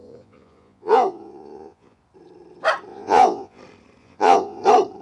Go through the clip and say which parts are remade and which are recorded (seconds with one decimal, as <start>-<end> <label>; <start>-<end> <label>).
0.0-2.0 remade; 2.0-2.9 recorded; 2.9-3.6 remade; 3.6-4.0 recorded; 4.0-4.6 remade; 4.6-5.0 recorded